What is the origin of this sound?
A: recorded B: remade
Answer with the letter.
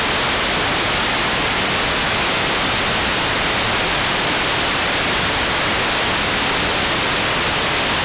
A